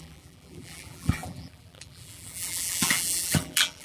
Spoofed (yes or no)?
yes